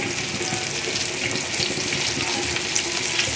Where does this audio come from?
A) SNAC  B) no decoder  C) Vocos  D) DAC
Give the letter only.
B